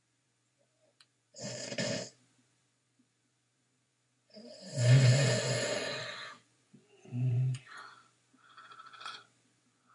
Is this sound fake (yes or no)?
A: yes